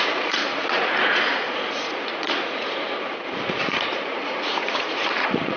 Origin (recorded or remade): remade